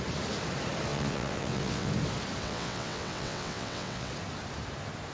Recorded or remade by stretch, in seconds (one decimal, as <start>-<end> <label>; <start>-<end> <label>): 0.0-0.9 recorded; 0.9-1.9 remade; 1.9-2.4 recorded; 2.4-4.1 remade; 4.1-5.1 recorded